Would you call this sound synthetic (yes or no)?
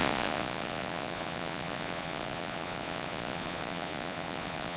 yes